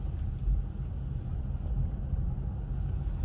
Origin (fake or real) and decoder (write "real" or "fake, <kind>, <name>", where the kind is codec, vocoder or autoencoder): real